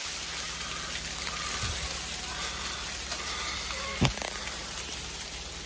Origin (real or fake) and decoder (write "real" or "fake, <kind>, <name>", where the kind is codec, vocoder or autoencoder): real